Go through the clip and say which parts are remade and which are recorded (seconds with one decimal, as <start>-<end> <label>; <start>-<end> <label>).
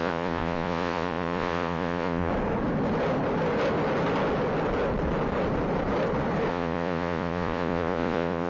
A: 0.0-2.3 remade; 2.3-6.5 recorded; 6.5-8.5 remade